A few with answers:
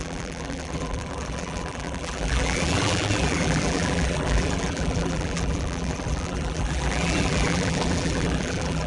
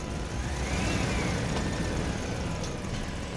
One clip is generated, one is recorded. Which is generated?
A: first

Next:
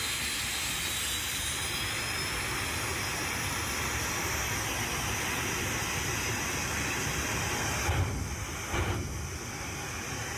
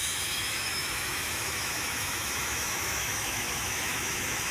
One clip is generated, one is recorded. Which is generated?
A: second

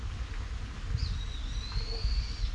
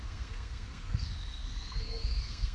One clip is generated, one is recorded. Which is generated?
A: second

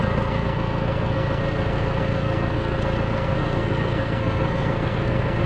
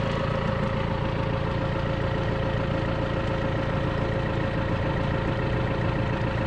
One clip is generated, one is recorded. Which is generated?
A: first